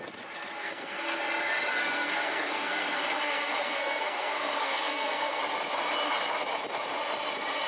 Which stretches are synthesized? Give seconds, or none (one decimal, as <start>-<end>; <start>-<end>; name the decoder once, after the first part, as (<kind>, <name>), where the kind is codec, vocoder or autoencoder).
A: 0.6-1.2 (codec, SNAC); 1.7-5.4